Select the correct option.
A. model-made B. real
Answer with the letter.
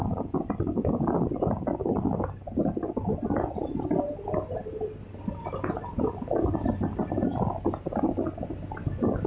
B